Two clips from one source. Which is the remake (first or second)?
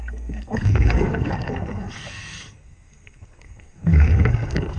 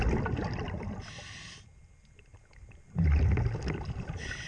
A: first